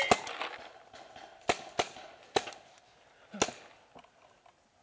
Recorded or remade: recorded